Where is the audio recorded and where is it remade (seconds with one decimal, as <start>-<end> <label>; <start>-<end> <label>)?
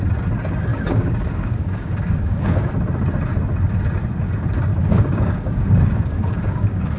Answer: 0.0-0.7 recorded; 0.7-2.7 remade; 2.7-4.8 recorded; 4.8-7.0 remade